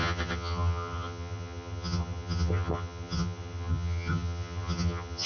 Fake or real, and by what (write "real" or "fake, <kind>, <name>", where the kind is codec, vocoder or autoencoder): fake, vocoder, HiFi-GAN